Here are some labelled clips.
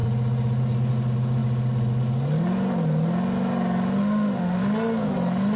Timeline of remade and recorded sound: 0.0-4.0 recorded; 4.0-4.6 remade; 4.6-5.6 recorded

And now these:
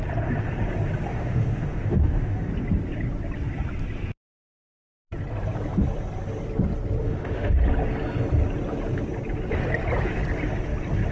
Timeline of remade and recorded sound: 0.0-1.1 recorded; 1.1-2.5 remade; 2.5-7.0 recorded; 7.0-7.5 remade; 7.5-11.1 recorded

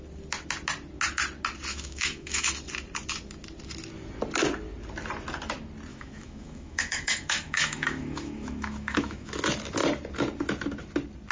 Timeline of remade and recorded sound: 0.0-1.7 recorded; 1.7-2.5 remade; 2.5-5.9 recorded; 5.9-9.3 remade; 9.3-11.3 recorded

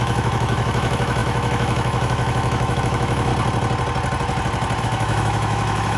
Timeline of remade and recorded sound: 0.0-3.3 remade; 3.3-4.8 recorded; 4.8-6.0 remade